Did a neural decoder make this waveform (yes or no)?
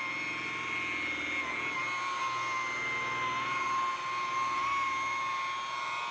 no